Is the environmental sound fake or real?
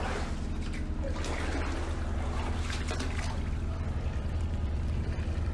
real